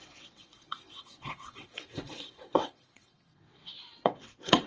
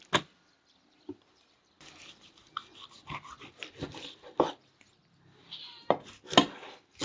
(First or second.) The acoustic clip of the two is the second